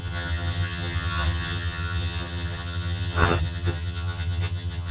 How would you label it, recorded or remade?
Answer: remade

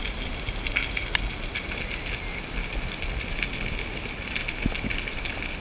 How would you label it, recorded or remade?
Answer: recorded